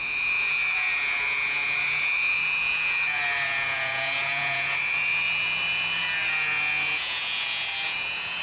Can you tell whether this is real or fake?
fake